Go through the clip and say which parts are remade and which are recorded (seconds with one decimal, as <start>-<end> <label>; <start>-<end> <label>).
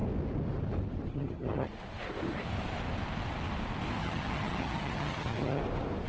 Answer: 0.0-1.1 recorded; 1.1-1.7 remade; 1.7-4.0 recorded; 4.0-5.6 remade; 5.6-6.1 recorded